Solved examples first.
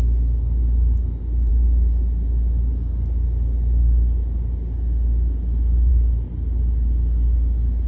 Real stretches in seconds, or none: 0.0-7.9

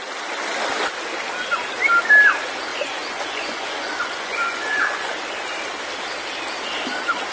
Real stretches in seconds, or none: 0.0-2.7; 5.1-7.3

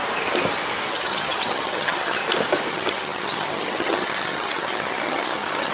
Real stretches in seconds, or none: 0.0-0.9; 2.2-2.7